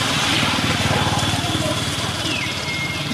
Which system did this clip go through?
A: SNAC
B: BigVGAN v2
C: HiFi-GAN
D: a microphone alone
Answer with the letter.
D